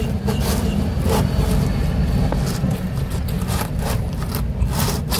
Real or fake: real